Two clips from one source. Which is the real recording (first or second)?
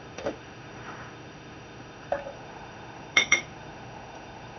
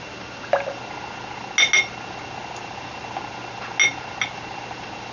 second